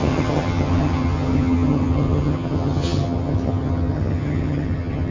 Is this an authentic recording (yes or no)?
no